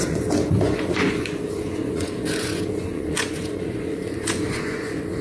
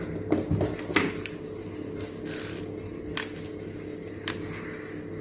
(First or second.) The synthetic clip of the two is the first